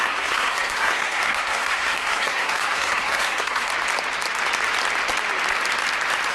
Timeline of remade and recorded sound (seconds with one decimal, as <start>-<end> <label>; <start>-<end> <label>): 0.0-3.7 remade; 3.7-6.3 recorded